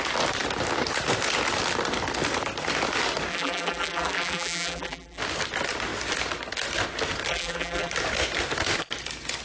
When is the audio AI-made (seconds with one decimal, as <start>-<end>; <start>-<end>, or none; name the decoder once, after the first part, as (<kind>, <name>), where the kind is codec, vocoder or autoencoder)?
3.3-5.2 (vocoder, BigVGAN v2); 7.3-7.9